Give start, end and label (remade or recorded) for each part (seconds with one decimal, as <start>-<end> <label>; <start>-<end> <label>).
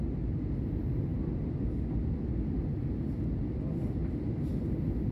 0.0-1.1 recorded; 1.1-2.3 remade; 2.3-5.1 recorded